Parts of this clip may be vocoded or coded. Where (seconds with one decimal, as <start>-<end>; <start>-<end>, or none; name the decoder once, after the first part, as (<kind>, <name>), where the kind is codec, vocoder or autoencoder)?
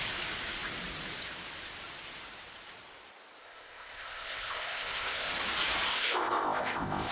3.4-5.3 (codec, ZipCodec); 5.9-7.1